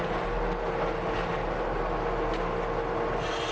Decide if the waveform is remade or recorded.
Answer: recorded